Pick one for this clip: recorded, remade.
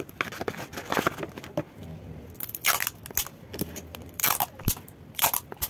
recorded